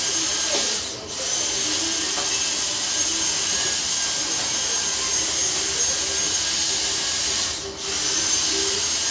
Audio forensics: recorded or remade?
recorded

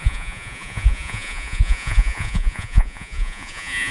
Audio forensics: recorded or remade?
remade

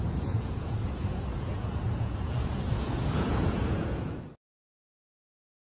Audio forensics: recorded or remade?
remade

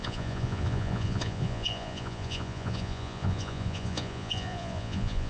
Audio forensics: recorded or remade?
remade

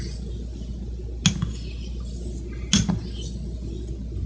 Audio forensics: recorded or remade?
recorded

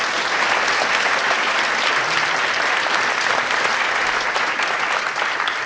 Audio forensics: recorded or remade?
recorded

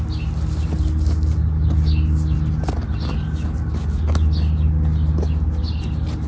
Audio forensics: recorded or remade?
recorded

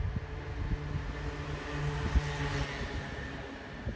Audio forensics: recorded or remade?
recorded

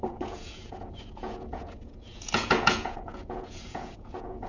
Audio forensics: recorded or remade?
remade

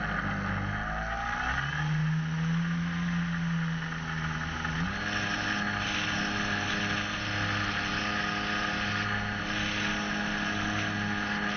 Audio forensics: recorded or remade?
recorded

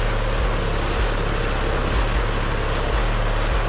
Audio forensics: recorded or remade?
recorded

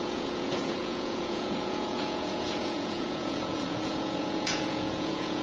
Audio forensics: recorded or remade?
remade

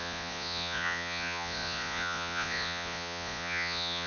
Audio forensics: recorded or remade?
remade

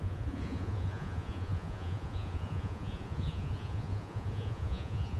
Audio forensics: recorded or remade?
remade